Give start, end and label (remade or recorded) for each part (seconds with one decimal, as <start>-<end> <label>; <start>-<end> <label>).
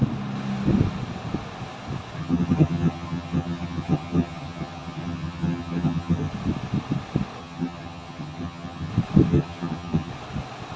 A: 0.0-2.2 recorded; 2.2-6.3 remade; 6.3-7.4 recorded; 7.4-8.9 remade; 8.9-9.3 recorded; 9.3-10.1 remade; 10.1-10.8 recorded